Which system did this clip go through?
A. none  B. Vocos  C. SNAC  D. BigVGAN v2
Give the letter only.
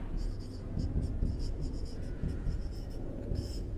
B